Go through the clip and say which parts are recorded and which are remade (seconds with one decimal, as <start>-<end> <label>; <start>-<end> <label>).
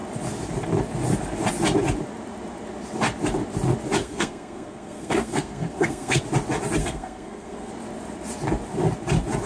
0.0-4.0 recorded; 4.0-6.2 remade; 6.2-6.8 recorded; 6.8-7.7 remade; 7.7-9.5 recorded